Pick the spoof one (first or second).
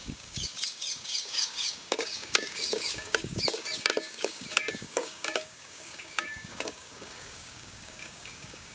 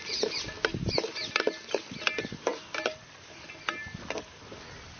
first